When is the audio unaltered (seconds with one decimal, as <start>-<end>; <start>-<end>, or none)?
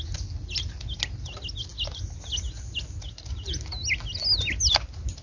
0.0-5.2